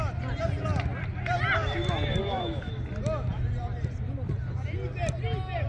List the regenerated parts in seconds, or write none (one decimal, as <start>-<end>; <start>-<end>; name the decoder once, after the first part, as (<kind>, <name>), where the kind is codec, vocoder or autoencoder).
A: 2.2-2.7 (autoencoder, DAC-VAE)